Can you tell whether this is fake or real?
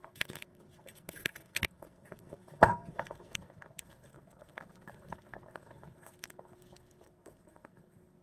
fake